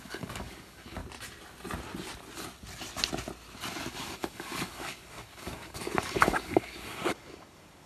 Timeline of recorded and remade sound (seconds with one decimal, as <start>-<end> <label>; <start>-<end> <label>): 0.0-1.0 remade; 1.0-3.9 recorded; 3.9-7.9 remade